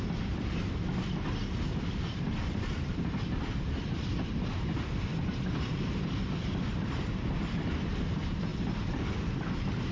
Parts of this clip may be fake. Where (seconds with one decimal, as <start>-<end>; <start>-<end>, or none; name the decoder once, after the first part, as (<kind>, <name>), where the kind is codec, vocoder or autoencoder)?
0.0-8.5 (vocoder, BigVGAN v2); 9.4-9.9